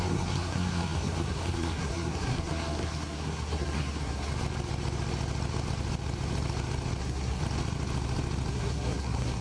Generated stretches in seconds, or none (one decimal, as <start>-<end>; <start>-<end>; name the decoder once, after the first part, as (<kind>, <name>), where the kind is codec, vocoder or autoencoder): 0.0-4.3 (codec, SNAC); 7.0-7.4; 8.5-9.4